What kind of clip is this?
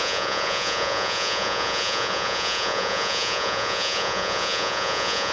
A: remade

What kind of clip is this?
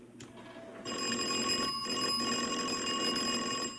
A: recorded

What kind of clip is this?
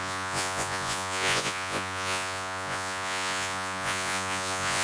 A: remade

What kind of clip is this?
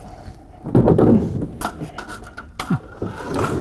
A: recorded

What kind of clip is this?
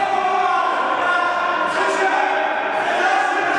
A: recorded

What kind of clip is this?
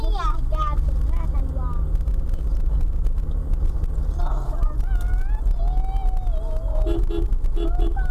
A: recorded